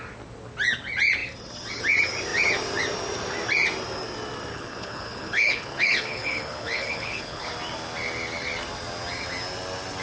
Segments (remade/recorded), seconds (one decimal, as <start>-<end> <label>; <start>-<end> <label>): 0.0-4.5 recorded; 4.5-7.5 remade; 7.5-10.0 recorded